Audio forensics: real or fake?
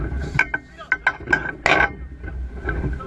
real